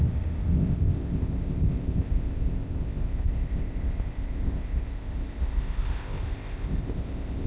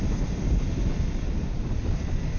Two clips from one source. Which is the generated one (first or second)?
first